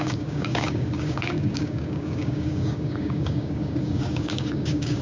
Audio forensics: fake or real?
fake